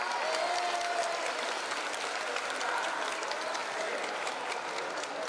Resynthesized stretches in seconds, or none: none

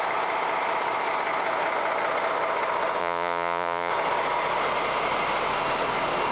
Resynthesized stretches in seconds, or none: 3.0-3.9 (vocoder, Vocos)

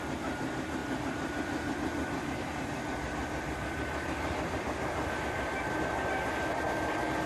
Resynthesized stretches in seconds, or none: none

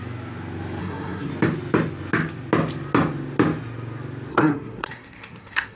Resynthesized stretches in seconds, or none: 0.8-1.3 (codec, SNAC); 4.3-5.8

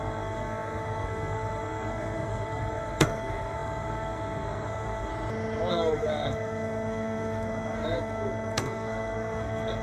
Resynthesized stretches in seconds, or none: 0.0-5.1 (codec, SNAC); 5.7-9.8

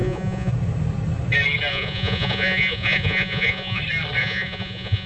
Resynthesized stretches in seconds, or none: 0.0-0.5 (vocoder, Vocos); 1.7-3.8; 4.2-5.1

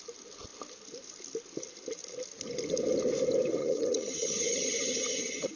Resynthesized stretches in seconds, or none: 3.6-5.5 (vocoder, HiFi-GAN)

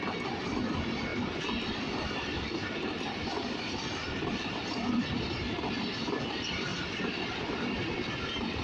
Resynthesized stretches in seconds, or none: 1.1-5.0 (vocoder, BigVGAN v2)